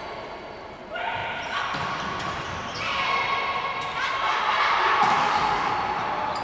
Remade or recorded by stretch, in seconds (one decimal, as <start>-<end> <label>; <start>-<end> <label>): 0.0-5.2 recorded; 5.2-5.7 remade; 5.7-6.4 recorded